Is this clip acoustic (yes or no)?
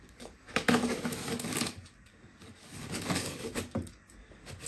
no